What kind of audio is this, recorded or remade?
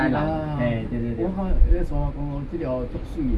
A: recorded